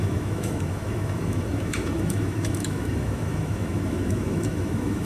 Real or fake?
fake